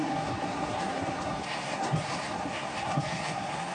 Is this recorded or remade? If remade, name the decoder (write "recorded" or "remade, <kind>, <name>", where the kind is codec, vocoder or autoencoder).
remade, codec, SNAC